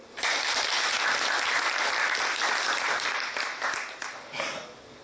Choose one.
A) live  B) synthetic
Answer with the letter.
A